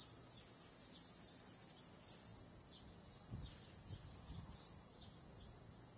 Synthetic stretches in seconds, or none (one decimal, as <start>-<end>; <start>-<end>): none